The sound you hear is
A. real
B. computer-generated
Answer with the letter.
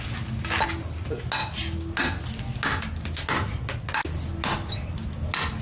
A